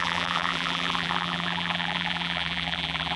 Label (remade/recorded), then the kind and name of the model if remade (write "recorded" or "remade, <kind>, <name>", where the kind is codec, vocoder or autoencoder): remade, vocoder, BigVGAN v2